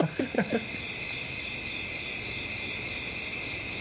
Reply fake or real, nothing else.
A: real